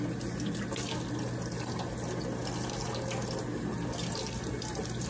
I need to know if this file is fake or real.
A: real